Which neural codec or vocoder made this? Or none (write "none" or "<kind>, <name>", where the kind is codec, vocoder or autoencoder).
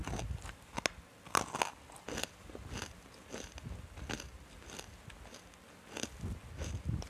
none